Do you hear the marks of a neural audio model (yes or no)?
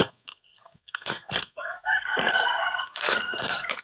yes